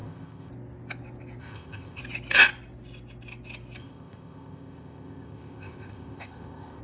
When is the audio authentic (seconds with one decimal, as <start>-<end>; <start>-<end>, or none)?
0.5-1.4; 2.0-3.8